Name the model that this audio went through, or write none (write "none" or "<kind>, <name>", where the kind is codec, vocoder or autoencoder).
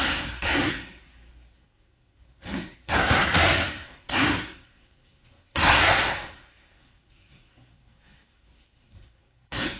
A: codec, SNAC